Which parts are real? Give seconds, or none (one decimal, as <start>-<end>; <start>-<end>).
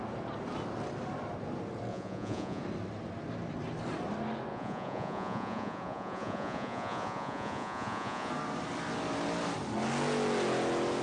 0.0-1.9; 2.6-4.5; 8.3-11.0